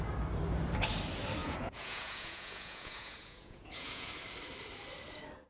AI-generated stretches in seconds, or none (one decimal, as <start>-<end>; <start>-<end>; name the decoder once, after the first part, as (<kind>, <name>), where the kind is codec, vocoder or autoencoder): 1.4-4.1 (vocoder, Vocos)